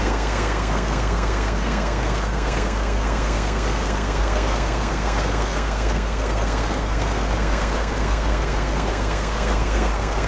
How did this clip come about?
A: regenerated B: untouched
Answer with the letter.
A